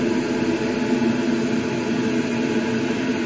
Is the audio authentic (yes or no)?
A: yes